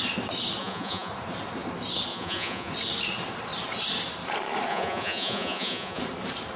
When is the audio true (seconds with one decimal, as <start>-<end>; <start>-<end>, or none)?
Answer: 0.0-0.6; 1.1-2.1; 2.7-4.7; 6.0-6.6